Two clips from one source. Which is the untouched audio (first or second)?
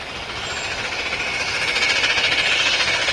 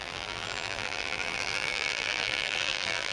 first